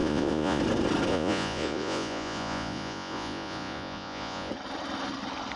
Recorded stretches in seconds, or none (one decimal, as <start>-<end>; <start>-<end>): 0.6-1.1; 4.5-5.6